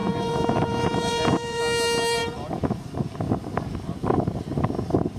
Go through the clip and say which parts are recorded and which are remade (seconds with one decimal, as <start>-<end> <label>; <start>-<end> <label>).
0.0-1.6 remade; 1.6-5.2 recorded

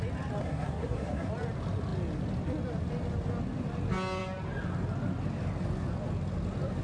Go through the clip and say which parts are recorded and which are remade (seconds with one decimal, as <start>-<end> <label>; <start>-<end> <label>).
0.0-0.4 recorded; 0.4-1.3 remade; 1.3-6.8 recorded

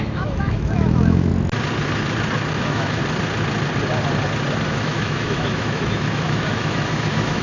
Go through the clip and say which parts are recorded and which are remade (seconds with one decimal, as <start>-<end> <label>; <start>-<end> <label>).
0.0-1.3 remade; 1.3-2.6 recorded; 2.6-3.0 remade; 3.0-4.7 recorded; 4.7-7.4 remade

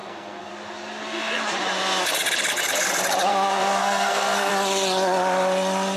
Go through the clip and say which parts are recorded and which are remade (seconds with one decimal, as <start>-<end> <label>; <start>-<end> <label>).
0.0-0.5 remade; 0.5-3.3 recorded; 3.3-4.5 remade; 4.5-6.0 recorded

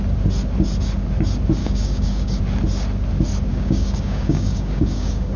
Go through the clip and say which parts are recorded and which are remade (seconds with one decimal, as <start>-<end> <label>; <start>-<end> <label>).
0.0-1.6 recorded; 1.6-2.4 remade; 2.4-3.5 recorded; 3.5-5.4 remade

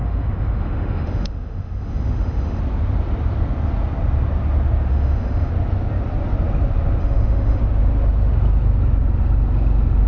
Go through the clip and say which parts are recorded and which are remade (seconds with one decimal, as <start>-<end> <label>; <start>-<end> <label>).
0.0-2.6 remade; 2.6-4.9 recorded; 4.9-5.5 remade; 5.5-7.0 recorded; 7.0-7.6 remade; 7.6-10.1 recorded

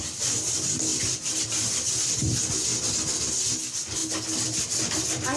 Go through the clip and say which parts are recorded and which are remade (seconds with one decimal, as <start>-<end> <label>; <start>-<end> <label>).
0.0-5.4 recorded

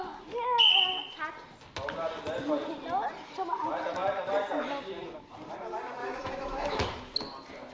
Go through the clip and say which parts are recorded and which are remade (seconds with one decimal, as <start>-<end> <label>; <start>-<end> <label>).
0.0-6.0 recorded; 6.0-6.8 remade; 6.8-7.7 recorded